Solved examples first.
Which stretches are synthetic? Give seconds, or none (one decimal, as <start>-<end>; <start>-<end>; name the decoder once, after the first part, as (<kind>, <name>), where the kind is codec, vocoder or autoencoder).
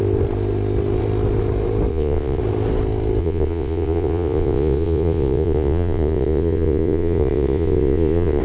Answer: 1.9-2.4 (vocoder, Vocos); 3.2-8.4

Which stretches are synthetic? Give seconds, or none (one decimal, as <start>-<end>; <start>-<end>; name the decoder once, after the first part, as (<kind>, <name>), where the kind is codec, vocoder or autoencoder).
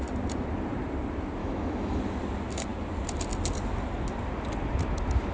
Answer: 1.4-2.0 (autoencoder, DAC-VAE)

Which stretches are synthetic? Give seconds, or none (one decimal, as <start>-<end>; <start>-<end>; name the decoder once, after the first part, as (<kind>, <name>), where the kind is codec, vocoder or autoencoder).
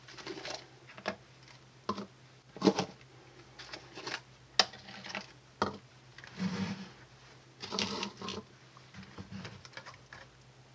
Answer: none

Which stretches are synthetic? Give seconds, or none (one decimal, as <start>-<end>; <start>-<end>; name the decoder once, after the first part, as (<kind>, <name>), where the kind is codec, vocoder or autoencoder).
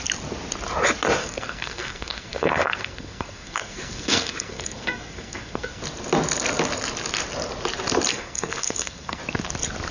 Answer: 1.2-5.8 (codec, SNAC); 8.1-9.2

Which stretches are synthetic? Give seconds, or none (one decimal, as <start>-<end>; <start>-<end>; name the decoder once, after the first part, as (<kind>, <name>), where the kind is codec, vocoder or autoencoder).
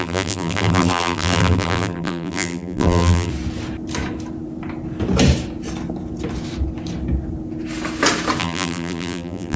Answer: 0.0-3.3 (vocoder, BigVGAN v2); 8.4-9.6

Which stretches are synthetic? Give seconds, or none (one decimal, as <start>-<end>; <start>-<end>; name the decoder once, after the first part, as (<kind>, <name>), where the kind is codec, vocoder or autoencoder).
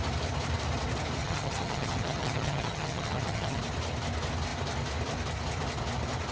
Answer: 1.2-3.6 (vocoder, HiFi-GAN)